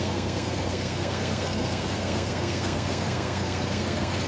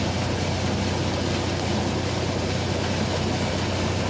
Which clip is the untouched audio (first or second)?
second